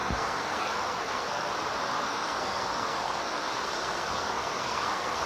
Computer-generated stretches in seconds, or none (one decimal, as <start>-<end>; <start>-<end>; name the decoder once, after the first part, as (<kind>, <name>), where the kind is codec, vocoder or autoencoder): 0.0-1.5 (codec, SNAC); 1.9-5.3